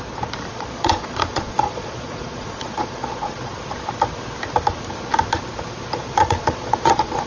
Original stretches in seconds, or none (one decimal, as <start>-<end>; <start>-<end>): 0.0-0.5; 3.5-6.0